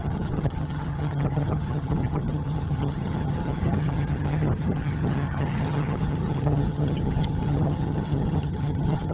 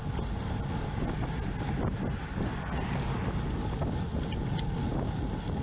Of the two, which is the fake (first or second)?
first